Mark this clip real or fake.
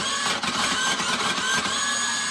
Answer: fake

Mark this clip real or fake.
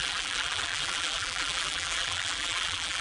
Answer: fake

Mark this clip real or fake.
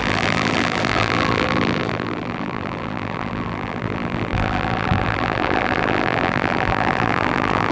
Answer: fake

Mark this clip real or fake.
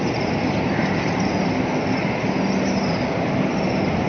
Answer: real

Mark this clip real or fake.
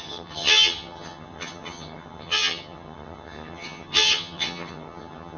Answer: fake